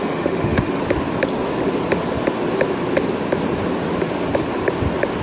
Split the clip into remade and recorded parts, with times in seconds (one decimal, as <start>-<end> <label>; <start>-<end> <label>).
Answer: 0.0-0.8 remade; 0.8-5.2 recorded

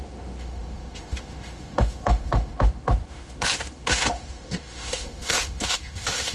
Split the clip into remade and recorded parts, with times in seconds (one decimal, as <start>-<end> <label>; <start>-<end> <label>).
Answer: 0.0-6.3 remade

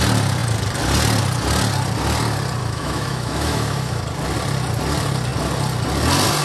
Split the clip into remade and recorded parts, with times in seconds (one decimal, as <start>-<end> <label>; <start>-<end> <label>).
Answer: 0.0-2.6 recorded; 2.6-4.0 remade; 4.0-6.4 recorded

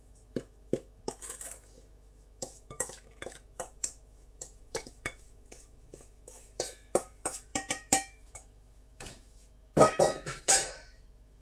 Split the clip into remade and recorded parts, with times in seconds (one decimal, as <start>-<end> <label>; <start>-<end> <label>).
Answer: 0.0-11.4 remade

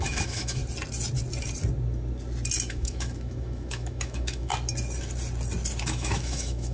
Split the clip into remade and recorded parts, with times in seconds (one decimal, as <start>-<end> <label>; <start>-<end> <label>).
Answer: 0.0-0.6 remade; 0.6-2.7 recorded; 2.7-4.5 remade; 4.5-5.8 recorded; 5.8-6.7 remade